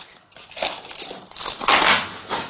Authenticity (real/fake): real